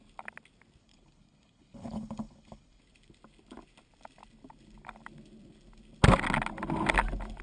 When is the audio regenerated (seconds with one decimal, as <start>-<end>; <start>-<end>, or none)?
0.8-2.8